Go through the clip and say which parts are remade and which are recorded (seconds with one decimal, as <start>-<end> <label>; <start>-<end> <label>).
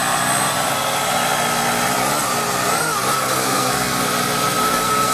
0.0-3.1 recorded; 3.1-3.9 remade; 3.9-4.6 recorded; 4.6-5.1 remade